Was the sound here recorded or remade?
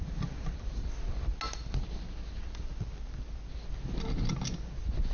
recorded